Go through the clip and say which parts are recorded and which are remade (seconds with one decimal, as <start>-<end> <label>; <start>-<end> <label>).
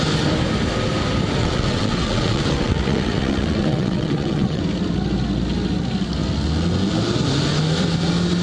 0.0-1.4 recorded; 1.4-4.6 remade; 4.6-8.4 recorded